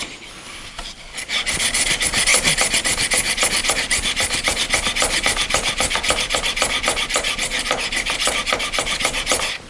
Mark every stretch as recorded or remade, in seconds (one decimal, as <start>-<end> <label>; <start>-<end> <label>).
0.0-9.7 recorded